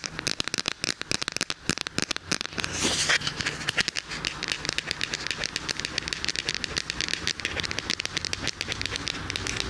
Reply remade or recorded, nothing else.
recorded